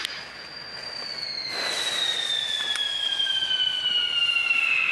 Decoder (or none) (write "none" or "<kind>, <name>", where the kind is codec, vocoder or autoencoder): none